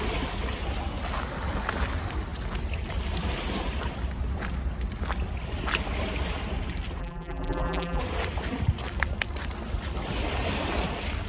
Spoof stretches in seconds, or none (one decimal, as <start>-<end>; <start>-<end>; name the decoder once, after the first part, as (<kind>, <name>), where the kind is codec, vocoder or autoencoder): 7.0-8.0 (vocoder, BigVGAN v2)

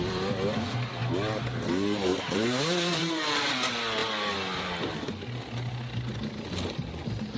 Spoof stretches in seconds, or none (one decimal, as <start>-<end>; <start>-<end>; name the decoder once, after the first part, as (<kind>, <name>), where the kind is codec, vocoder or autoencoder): 2.1-3.5 (vocoder, BigVGAN v2)

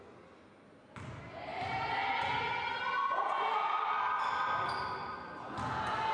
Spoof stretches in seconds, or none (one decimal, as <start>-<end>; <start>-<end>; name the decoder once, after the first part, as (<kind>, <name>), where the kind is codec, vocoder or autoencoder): none